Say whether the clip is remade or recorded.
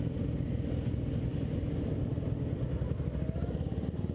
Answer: recorded